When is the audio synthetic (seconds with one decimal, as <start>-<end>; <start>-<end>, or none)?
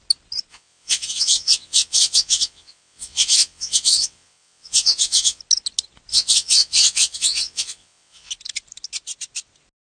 0.5-5.4; 6.1-8.3